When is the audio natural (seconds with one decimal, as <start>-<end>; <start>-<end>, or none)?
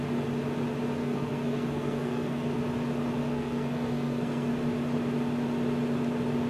0.0-1.0; 2.6-3.2; 4.5-6.5